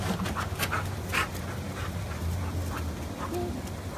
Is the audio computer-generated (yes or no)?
no